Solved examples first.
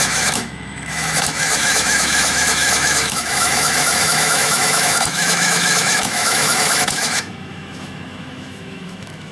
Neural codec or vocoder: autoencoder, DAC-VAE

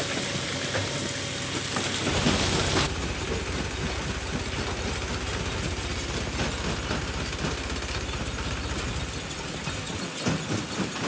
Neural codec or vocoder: none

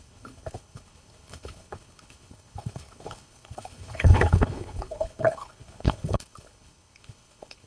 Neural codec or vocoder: codec, HILCodec